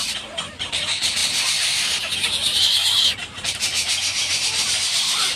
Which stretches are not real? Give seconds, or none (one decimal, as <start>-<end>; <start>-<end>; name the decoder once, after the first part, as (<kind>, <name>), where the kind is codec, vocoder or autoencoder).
4.3-5.4 (vocoder, BigVGAN v2)